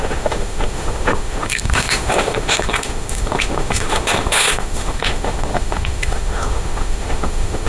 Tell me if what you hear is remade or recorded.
remade